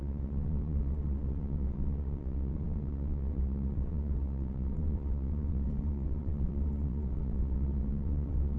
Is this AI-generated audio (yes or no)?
yes